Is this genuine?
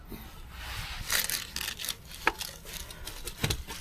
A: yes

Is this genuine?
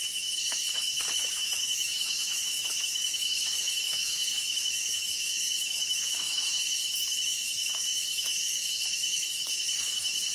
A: no